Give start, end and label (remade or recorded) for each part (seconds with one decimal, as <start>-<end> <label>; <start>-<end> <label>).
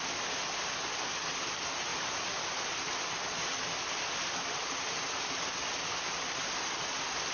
0.0-7.3 recorded